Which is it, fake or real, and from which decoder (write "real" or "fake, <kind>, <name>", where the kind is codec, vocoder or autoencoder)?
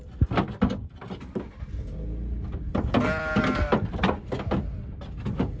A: real